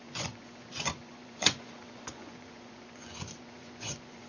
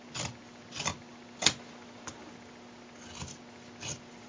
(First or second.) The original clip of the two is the second